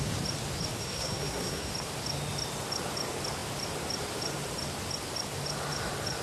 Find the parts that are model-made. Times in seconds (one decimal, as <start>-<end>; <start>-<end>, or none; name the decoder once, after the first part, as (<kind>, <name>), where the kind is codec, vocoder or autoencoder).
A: 0.8-1.7 (codec, SNAC)

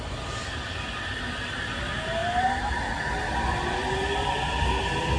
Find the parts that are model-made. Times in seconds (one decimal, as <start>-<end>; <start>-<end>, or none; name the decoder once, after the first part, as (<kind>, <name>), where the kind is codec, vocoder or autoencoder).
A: none

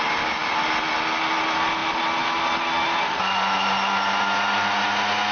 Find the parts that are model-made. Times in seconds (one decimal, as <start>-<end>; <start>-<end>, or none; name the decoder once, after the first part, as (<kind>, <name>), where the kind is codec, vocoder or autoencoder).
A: none

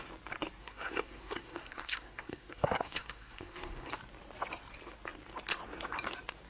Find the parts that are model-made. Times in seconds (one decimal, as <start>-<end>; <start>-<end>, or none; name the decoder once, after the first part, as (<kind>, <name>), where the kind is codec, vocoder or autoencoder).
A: 0.6-3.9 (codec, SNAC)

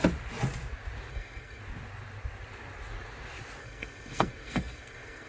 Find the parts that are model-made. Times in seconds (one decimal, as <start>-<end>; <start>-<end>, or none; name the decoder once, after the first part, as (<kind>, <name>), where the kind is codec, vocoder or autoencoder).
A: 1.1-1.6 (codec, SNAC); 3.6-5.3